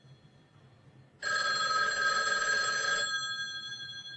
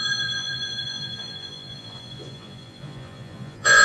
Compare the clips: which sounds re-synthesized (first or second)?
second